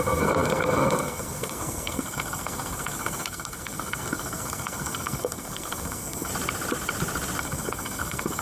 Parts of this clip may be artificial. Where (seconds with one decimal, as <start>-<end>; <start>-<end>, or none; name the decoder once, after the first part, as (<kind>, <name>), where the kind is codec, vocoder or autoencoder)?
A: 0.0-6.3 (codec, SNAC); 7.4-8.4